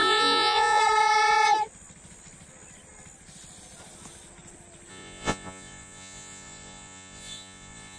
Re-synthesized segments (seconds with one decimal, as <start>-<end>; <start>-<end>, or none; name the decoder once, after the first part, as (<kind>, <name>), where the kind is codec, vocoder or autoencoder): 0.0-0.8 (vocoder, Vocos); 4.9-8.0